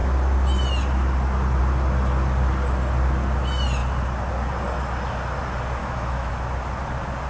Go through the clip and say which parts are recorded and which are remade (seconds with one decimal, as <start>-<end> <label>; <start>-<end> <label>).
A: 0.0-5.8 recorded; 5.8-6.3 remade; 6.3-7.3 recorded